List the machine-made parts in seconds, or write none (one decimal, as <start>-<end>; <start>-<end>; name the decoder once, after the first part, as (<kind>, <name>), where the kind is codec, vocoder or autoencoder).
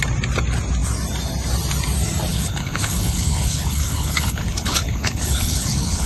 2.3-6.1 (codec, HILCodec)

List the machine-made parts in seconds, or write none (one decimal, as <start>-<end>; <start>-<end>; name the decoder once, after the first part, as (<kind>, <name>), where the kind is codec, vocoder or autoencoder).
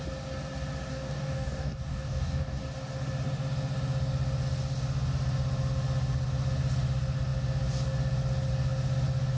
0.9-2.6 (codec, DAC)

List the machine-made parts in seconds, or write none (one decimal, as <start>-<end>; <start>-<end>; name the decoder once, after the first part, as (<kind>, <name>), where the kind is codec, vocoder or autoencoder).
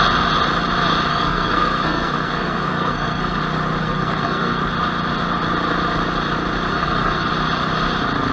1.1-3.4 (codec, SNAC); 3.8-4.6; 6.7-7.3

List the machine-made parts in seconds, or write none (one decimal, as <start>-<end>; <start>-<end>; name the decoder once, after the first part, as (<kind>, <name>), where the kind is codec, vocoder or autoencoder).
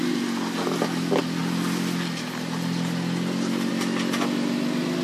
none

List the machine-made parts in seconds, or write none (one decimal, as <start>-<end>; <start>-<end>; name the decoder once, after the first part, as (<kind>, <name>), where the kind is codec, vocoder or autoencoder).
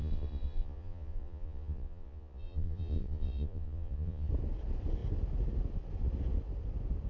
0.0-4.3 (vocoder, Vocos)